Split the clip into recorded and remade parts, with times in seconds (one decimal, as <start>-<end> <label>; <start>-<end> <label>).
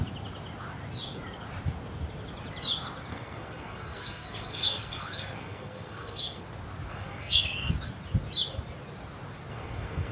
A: 0.0-3.1 recorded; 3.1-6.4 remade; 6.4-6.9 recorded; 6.9-7.7 remade; 7.7-9.5 recorded; 9.5-10.1 remade